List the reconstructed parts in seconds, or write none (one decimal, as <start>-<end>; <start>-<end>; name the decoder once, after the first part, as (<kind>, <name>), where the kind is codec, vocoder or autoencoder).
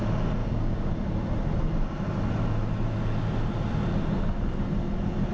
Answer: 0.4-0.9 (codec, DAC)